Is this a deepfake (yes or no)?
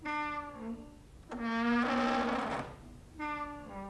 no